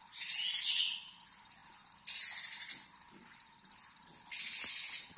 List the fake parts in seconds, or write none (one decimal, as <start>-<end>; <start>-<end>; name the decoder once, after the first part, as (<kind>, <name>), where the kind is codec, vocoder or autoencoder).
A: none